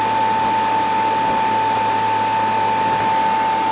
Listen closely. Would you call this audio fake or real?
real